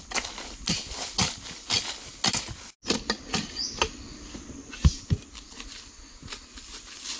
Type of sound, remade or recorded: recorded